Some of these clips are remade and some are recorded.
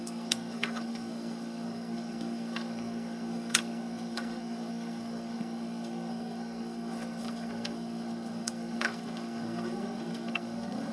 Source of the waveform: remade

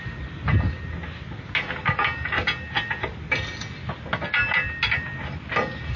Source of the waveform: recorded